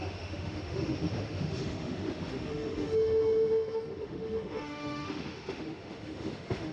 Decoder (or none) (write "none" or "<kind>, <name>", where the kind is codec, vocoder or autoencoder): autoencoder, DAC-VAE